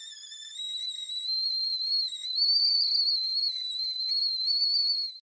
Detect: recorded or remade recorded